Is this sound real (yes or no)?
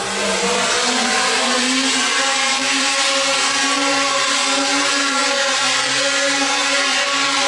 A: no